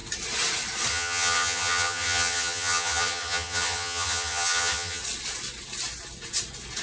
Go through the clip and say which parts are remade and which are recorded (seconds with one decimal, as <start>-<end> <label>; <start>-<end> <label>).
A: 0.0-0.9 recorded; 0.9-5.0 remade; 5.0-6.8 recorded